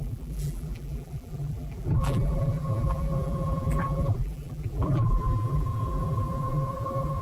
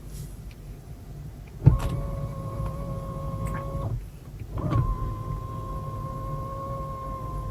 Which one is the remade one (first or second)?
first